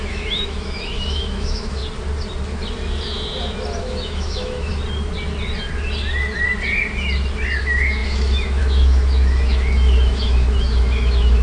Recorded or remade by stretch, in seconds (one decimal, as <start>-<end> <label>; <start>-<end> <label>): 0.0-1.8 remade; 1.8-3.8 recorded; 3.8-4.7 remade; 4.7-7.6 recorded; 7.6-11.4 remade